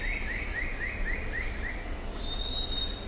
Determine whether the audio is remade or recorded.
recorded